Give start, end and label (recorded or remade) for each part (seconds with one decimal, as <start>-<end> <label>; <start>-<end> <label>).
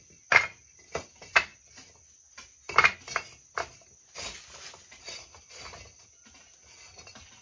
0.0-7.4 recorded